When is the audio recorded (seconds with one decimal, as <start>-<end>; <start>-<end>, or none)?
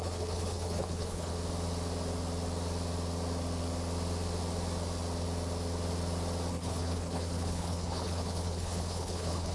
1.3-6.5